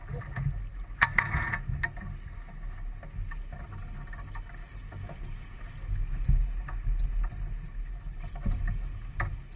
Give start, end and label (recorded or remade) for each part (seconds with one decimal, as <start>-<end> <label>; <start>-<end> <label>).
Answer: 0.0-4.7 recorded; 4.7-5.6 remade; 5.6-9.6 recorded